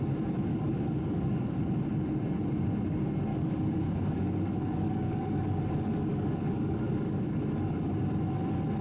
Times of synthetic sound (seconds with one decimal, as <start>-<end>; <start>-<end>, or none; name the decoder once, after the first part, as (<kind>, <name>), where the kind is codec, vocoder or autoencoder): 0.5-1.6 (codec, DAC); 3.3-5.5; 6.1-7.4